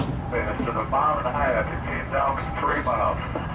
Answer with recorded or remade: recorded